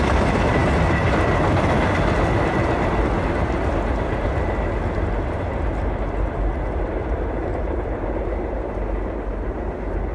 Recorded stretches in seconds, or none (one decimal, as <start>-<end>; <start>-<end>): 0.0-10.1